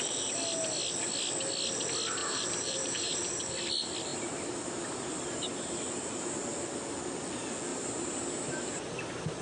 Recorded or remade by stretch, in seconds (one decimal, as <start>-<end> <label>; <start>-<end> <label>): 0.0-2.2 recorded; 2.2-3.4 remade; 3.4-4.1 recorded; 4.1-5.9 remade; 5.9-7.7 recorded; 7.7-9.0 remade; 9.0-9.4 recorded